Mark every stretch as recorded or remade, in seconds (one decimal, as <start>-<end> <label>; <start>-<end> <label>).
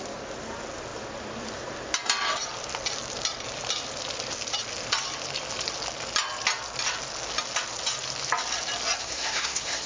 0.0-9.0 recorded; 9.0-9.9 remade